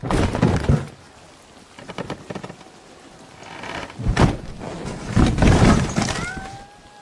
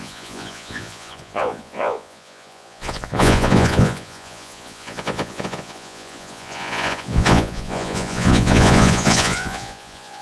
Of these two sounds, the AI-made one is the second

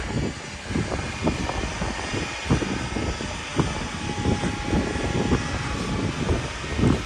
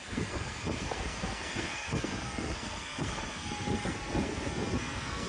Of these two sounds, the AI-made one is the second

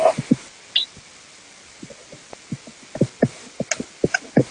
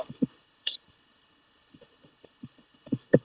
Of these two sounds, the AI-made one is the second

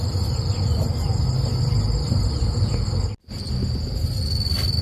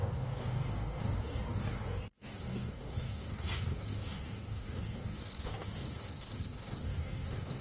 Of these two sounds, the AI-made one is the second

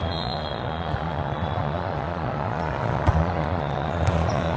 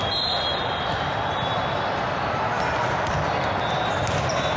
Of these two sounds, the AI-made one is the first